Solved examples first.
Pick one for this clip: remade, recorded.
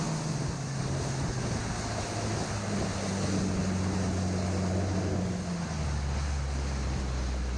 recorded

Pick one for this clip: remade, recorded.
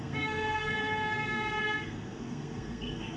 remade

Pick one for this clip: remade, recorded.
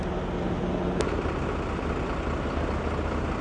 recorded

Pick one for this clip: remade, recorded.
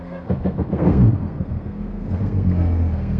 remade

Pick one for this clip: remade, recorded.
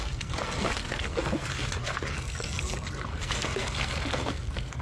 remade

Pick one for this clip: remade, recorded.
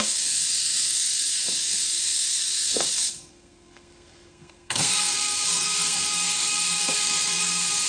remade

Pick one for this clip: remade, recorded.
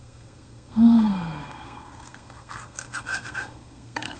remade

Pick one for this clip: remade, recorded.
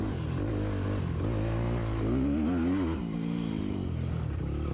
recorded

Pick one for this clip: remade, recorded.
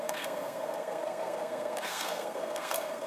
remade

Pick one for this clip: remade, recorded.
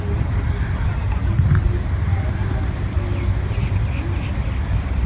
recorded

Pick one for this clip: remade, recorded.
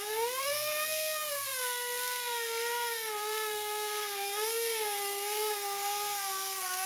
remade